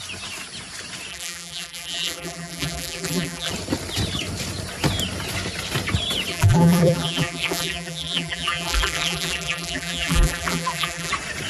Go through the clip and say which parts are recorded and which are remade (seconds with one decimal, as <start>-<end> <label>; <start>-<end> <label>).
0.0-1.1 recorded; 1.1-3.5 remade; 3.5-6.3 recorded; 6.3-11.1 remade; 11.1-11.5 recorded